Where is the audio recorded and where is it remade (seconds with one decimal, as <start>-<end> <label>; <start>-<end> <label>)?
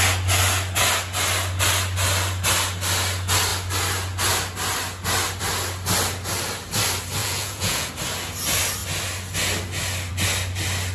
0.0-7.2 recorded; 7.2-7.9 remade; 7.9-10.9 recorded